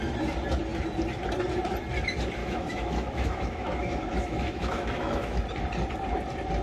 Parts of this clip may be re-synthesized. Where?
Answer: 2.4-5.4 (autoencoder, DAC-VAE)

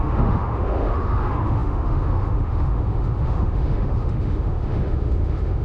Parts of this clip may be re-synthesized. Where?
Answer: 0.0-5.6 (autoencoder, DAC-VAE)

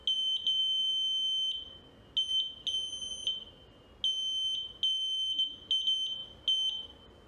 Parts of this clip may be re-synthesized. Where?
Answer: 4.9-5.5 (autoencoder, DAC-VAE)

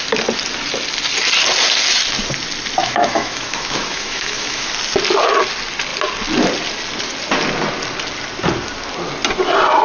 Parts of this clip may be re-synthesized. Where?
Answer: 2.8-4.7 (autoencoder, DAC-VAE)

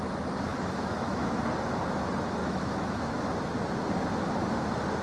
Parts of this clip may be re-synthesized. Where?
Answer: 0.5-1.4 (autoencoder, DAC-VAE); 2.4-3.3